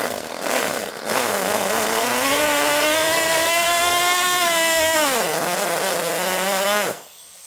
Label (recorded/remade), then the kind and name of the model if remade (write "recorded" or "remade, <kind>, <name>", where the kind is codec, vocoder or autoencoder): remade, codec, SNAC